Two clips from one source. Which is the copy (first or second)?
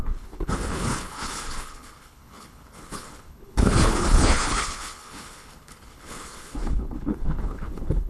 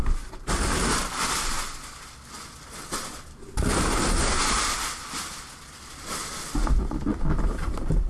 first